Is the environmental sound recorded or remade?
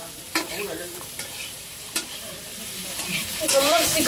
remade